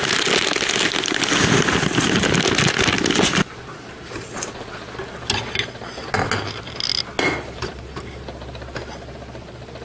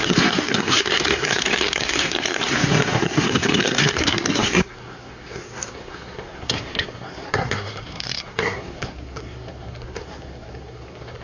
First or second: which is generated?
second